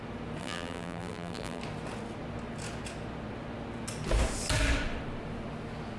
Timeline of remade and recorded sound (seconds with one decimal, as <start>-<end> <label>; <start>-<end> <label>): 0.0-0.4 recorded; 0.4-1.6 remade; 1.6-6.0 recorded